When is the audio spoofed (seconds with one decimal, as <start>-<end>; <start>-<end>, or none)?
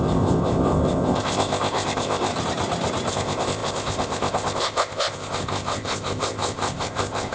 0.0-2.3; 3.1-7.3